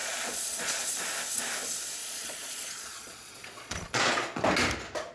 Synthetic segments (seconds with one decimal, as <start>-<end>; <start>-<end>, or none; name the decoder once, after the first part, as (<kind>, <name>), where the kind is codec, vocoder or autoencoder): 0.0-0.9 (vocoder, Vocos); 2.0-4.4